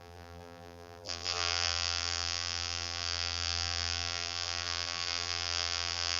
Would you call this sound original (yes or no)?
no